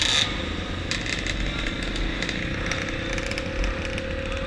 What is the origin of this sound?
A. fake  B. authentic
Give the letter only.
B